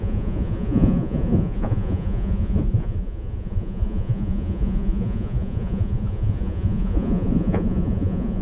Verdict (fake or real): fake